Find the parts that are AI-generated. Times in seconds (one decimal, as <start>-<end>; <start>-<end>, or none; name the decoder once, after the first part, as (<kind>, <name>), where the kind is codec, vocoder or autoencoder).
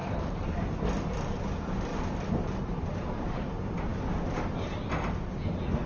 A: 0.0-0.9 (vocoder, BigVGAN v2)